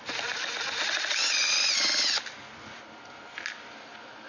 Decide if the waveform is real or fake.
real